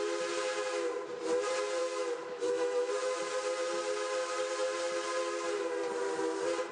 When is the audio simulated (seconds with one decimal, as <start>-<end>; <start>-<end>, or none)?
1.8-3.2